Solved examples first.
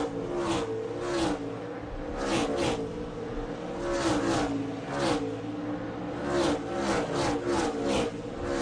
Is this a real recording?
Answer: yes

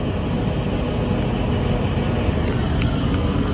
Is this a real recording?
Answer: yes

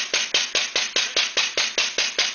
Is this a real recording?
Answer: yes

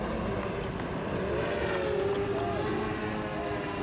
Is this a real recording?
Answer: yes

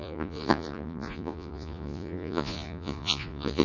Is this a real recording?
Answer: no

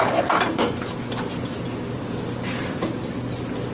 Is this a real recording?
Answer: yes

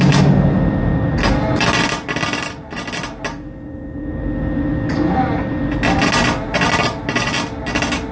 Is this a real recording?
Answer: yes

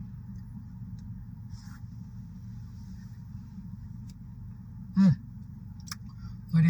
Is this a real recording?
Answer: yes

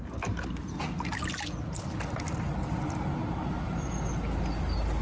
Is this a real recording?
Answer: yes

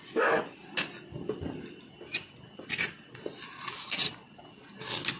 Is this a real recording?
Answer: yes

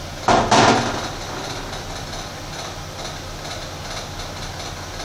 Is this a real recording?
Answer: yes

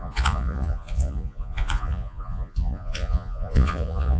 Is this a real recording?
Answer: no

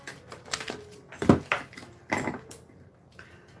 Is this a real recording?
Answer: yes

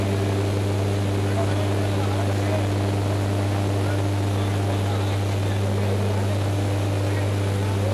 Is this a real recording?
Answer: yes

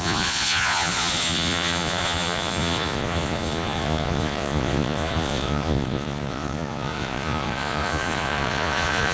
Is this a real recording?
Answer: no